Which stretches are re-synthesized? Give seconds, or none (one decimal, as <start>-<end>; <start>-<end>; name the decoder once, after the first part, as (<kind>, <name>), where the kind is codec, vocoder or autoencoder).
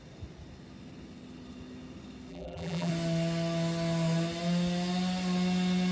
2.3-2.9 (vocoder, BigVGAN v2)